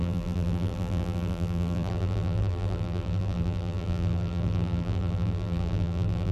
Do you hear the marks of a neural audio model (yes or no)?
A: yes